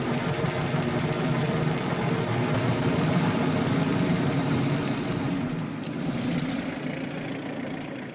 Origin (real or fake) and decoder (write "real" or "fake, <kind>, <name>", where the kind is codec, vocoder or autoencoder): fake, vocoder, BigVGAN v2